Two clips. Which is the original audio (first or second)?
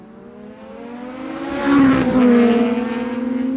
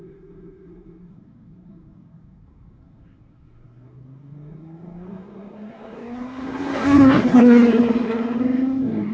first